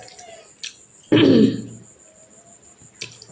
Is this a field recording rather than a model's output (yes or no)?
yes